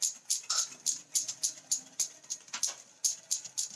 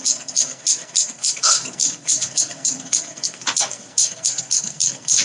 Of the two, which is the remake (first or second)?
second